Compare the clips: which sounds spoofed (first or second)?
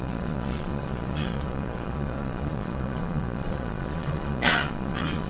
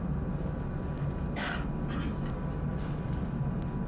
first